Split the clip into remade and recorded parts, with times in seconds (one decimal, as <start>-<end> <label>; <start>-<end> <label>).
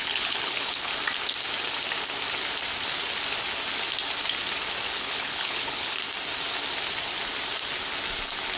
0.0-0.9 remade; 0.9-4.9 recorded; 4.9-6.0 remade; 6.0-8.6 recorded